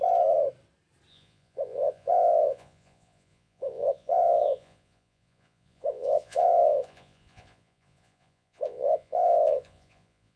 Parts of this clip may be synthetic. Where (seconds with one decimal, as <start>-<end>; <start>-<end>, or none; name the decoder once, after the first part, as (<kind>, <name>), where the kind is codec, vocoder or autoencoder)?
1.1-10.4 (vocoder, Vocos)